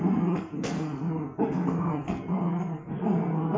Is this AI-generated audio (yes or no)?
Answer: yes